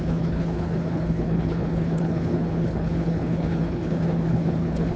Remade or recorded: remade